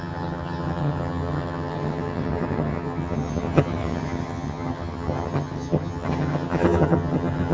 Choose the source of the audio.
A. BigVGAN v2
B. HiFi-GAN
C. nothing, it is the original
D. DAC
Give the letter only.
B